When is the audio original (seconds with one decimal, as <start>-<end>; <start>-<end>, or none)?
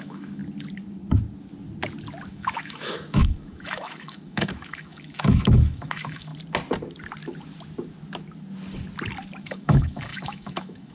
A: 0.4-2.3; 6.3-9.4